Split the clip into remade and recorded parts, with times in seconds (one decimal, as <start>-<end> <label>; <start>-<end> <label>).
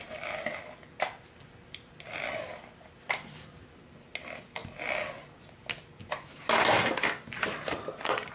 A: 0.0-8.3 recorded